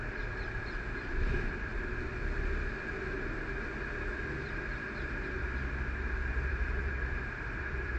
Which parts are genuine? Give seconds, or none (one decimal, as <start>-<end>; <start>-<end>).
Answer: 1.7-6.5